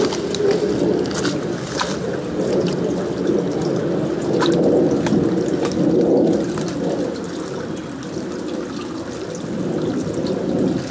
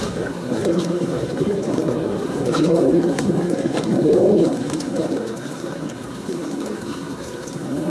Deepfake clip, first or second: second